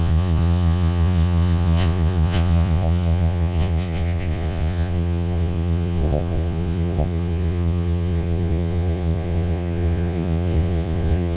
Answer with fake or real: fake